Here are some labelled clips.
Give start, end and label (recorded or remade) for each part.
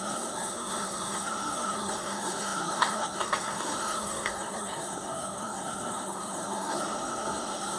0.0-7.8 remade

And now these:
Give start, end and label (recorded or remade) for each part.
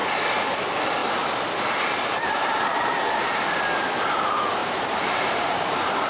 0.0-0.5 remade; 0.5-2.1 recorded; 2.1-3.3 remade; 3.3-4.6 recorded; 4.6-6.1 remade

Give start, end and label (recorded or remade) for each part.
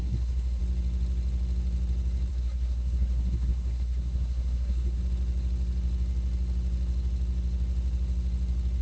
0.0-0.6 remade; 0.6-2.3 recorded; 2.3-5.0 remade; 5.0-8.8 recorded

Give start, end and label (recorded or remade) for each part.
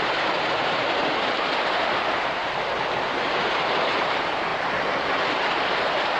0.0-1.0 remade; 1.0-2.0 recorded; 2.0-2.4 remade; 2.4-3.1 recorded; 3.1-4.5 remade; 4.5-5.0 recorded; 5.0-6.2 remade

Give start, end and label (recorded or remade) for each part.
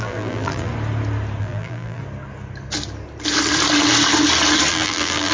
0.0-0.7 remade; 0.7-1.4 recorded; 1.4-2.0 remade; 2.0-4.7 recorded; 4.7-5.3 remade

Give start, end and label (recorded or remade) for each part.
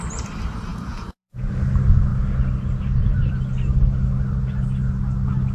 0.0-0.7 recorded; 0.7-1.5 remade; 1.5-5.5 recorded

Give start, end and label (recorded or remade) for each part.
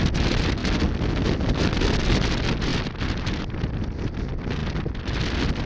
0.0-5.7 recorded